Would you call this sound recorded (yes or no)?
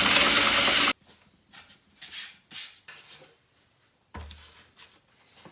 yes